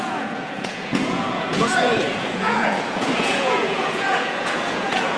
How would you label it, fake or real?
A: fake